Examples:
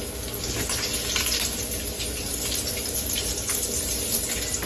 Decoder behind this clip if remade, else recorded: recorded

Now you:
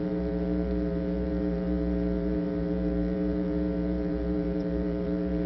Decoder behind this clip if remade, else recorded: remade, vocoder, BigVGAN v2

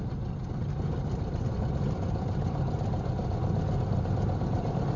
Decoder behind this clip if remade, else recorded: recorded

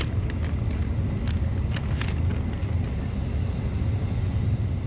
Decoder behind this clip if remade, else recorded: recorded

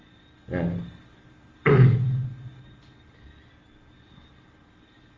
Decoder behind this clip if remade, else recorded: recorded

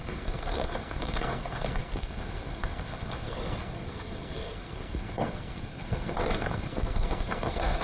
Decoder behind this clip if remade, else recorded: remade, codec, SNAC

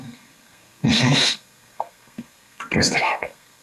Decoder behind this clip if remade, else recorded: remade, codec, SNAC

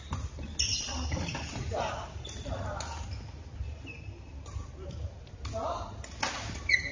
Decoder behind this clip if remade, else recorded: recorded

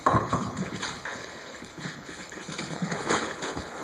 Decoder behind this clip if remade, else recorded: remade, codec, HILCodec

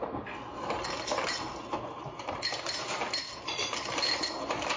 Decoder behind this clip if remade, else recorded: recorded